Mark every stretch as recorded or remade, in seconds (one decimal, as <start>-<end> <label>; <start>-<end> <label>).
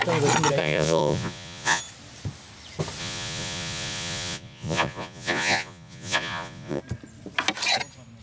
0.0-0.6 recorded; 0.6-1.8 remade; 1.8-3.0 recorded; 3.0-6.8 remade; 6.8-8.2 recorded